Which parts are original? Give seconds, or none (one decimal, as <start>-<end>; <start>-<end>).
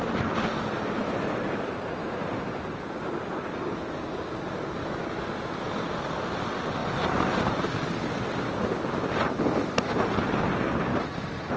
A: 0.0-2.0; 2.8-6.8; 8.9-11.6